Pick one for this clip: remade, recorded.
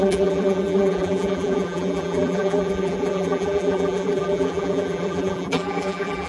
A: remade